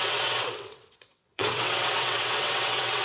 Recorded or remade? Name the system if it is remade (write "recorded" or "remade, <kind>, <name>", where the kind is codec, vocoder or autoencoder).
remade, vocoder, WaveNeXt